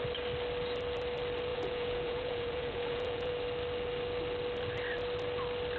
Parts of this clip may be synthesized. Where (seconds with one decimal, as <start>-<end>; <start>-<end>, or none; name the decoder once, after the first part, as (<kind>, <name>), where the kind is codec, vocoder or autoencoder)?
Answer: 1.5-3.3 (vocoder, Vocos)